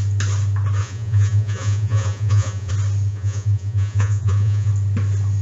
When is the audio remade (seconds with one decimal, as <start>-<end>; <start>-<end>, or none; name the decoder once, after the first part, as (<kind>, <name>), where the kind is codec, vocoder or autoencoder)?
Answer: 0.8-2.7 (vocoder, Vocos); 3.1-4.7